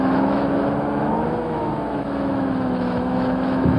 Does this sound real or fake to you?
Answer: fake